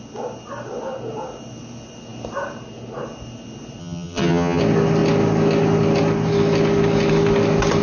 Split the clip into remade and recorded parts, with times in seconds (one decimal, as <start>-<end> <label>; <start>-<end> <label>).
0.0-3.8 recorded; 3.8-4.6 remade; 4.6-7.8 recorded

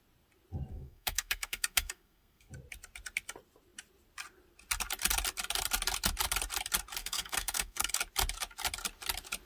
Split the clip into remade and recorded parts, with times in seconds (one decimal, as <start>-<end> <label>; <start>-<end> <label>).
0.0-0.7 recorded; 0.7-2.5 remade; 2.5-7.0 recorded; 7.0-7.9 remade; 7.9-9.5 recorded

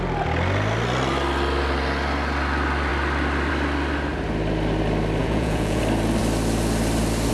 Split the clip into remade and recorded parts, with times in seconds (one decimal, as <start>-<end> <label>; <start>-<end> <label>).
0.0-5.2 recorded; 5.2-5.8 remade; 5.8-7.3 recorded